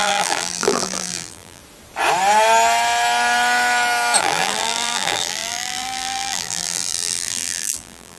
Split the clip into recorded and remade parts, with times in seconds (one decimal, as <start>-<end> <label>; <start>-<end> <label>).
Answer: 0.0-1.6 remade; 1.6-4.2 recorded; 4.2-8.2 remade